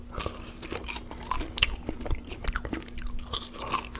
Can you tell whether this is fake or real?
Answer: real